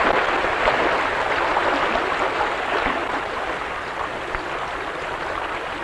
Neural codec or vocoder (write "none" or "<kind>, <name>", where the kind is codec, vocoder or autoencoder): none